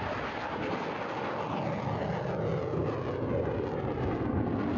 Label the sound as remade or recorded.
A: recorded